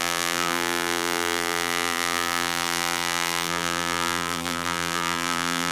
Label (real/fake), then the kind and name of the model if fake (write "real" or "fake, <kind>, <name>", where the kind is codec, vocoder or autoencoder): fake, vocoder, BigVGAN v2